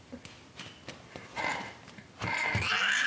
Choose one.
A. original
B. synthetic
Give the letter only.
A